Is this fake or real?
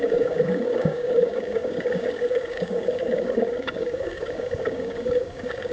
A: fake